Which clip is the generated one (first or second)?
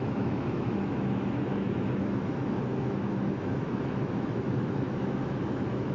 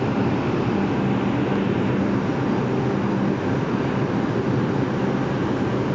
first